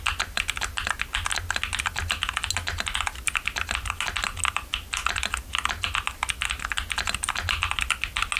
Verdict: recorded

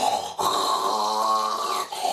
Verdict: recorded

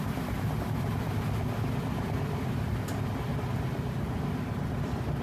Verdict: remade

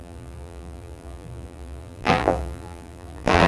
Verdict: remade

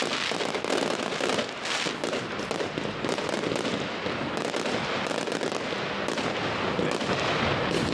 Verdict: recorded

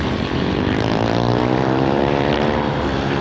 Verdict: remade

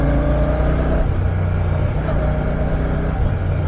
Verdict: recorded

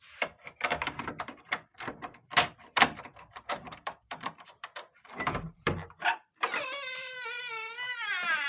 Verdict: remade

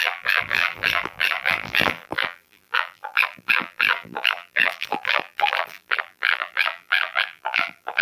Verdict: remade